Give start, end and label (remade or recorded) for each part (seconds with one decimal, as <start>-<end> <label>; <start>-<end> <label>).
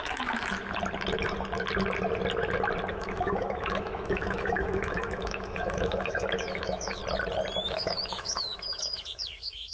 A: 0.0-0.6 remade; 0.6-2.9 recorded; 2.9-7.0 remade; 7.0-7.6 recorded; 7.6-9.7 remade